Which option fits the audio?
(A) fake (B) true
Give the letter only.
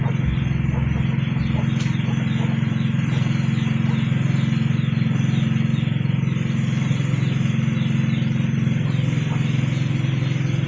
B